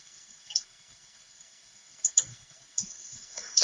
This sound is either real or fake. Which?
fake